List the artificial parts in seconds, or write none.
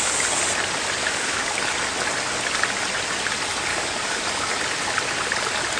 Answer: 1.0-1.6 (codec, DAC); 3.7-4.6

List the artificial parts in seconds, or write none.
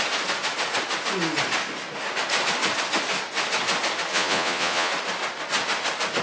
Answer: 4.1-4.9 (vocoder, Vocos)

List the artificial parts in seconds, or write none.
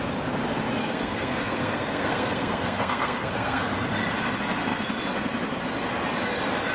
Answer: 0.8-3.7 (codec, SNAC)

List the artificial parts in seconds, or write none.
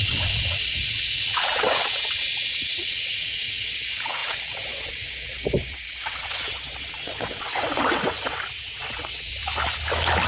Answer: 0.0-9.4 (vocoder, WaveNeXt)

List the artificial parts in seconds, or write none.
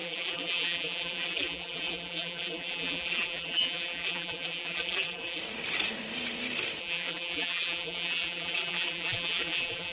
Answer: 0.0-5.4 (vocoder, BigVGAN v2); 6.8-9.9